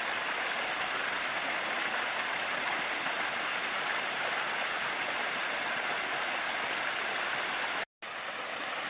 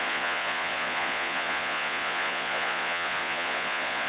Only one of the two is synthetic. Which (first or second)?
second